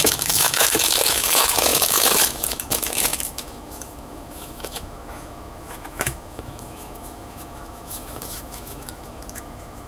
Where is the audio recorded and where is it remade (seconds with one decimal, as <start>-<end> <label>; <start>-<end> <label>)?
0.0-9.9 remade